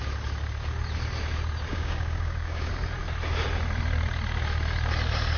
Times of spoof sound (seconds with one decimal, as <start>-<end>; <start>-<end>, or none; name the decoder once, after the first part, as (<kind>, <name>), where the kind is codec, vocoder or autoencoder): 1.7-2.7 (codec, DAC)